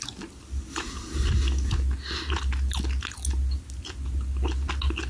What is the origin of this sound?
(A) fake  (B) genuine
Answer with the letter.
B